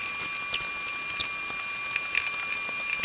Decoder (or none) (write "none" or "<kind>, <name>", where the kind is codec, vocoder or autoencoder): none